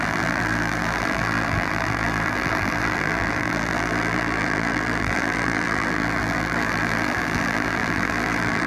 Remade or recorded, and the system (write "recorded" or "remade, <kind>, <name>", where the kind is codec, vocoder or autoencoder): remade, vocoder, BigVGAN v2